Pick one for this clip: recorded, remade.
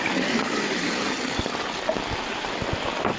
recorded